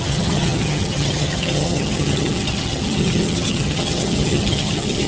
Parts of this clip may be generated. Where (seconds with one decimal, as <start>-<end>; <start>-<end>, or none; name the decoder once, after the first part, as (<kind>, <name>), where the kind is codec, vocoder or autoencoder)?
0.0-5.1 (vocoder, HiFi-GAN)